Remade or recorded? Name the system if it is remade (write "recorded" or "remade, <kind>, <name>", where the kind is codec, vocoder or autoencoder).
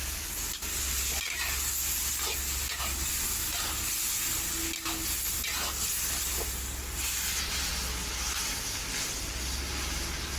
recorded